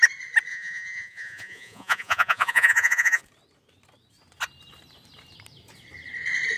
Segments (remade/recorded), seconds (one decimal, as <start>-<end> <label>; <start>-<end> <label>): 0.0-0.5 recorded; 0.5-3.2 remade; 3.2-6.6 recorded